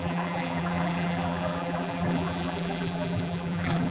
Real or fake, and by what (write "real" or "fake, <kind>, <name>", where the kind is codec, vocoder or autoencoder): fake, vocoder, BigVGAN v2